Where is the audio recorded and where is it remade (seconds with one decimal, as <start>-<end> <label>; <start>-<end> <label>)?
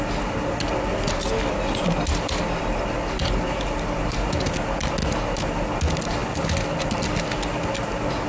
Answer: 0.0-8.3 recorded